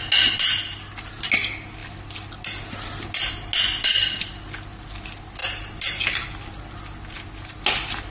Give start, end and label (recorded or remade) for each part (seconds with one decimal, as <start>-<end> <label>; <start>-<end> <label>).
0.0-8.1 recorded